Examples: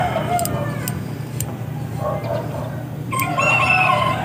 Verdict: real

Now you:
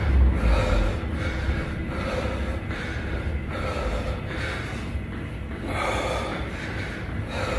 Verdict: real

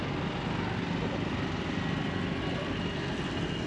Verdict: real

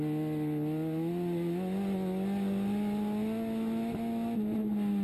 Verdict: real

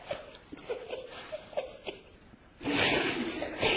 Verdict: real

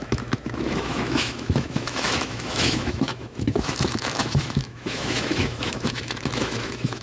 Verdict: fake